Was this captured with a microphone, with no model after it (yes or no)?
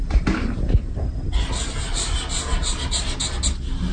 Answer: yes